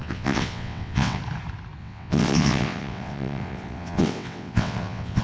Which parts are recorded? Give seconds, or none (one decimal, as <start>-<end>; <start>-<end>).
1.2-1.8